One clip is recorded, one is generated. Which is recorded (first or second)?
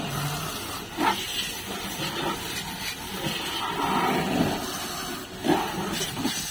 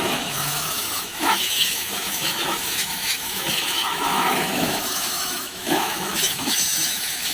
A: first